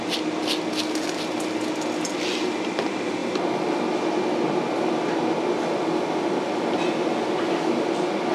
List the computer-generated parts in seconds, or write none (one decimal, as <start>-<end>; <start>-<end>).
none

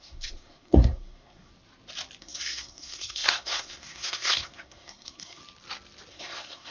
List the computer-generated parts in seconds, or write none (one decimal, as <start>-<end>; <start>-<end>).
0.0-1.5; 2.2-5.4; 6.1-6.7

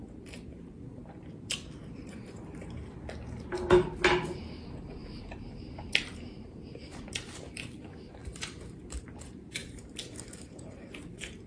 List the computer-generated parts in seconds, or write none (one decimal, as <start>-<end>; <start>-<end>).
0.0-2.8; 4.4-11.5

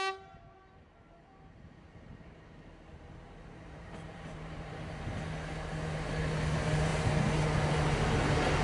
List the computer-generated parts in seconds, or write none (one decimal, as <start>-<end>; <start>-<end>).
2.9-4.9

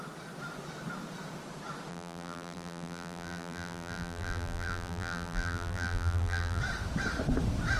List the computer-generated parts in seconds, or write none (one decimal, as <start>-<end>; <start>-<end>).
1.9-6.6